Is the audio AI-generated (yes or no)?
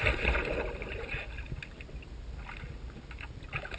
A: no